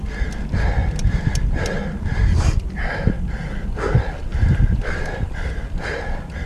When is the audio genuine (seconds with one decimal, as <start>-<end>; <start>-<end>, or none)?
0.0-4.3; 5.5-6.5